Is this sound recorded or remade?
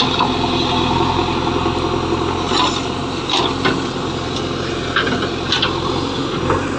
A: recorded